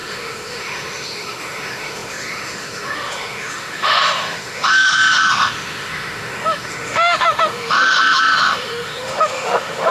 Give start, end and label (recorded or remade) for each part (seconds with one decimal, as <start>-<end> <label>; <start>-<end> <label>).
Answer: 0.0-9.9 remade